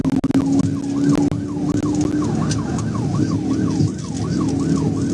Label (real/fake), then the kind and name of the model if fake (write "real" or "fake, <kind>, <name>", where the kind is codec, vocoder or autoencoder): real